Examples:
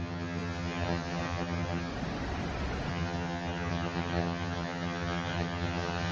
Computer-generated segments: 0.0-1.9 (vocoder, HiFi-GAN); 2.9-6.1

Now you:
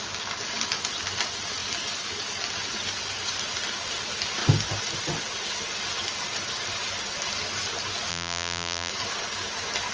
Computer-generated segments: 8.1-8.9 (vocoder, BigVGAN v2)

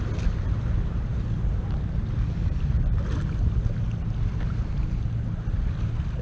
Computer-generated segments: none

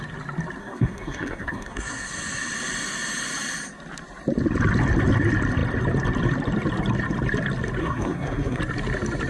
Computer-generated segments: 0.6-2.1 (codec, SNAC); 7.8-8.6

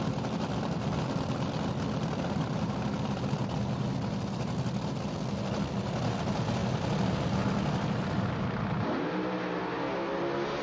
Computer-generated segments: none

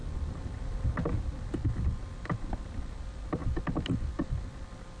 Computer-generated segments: 0.0-3.4 (vocoder, BigVGAN v2); 4.1-5.0